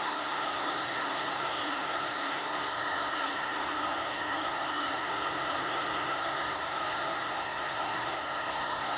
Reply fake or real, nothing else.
fake